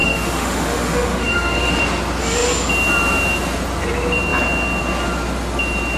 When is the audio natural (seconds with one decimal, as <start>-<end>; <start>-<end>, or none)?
1.8-6.0

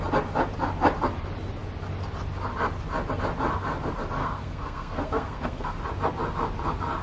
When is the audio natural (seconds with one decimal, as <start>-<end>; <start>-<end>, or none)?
0.0-4.2; 5.8-7.0

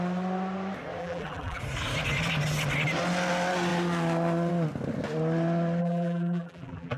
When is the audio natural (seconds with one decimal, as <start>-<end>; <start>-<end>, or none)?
0.0-1.0; 1.6-5.8